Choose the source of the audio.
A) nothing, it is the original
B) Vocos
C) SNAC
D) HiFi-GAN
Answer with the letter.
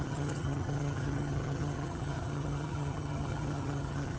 D